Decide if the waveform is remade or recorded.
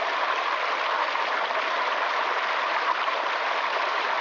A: recorded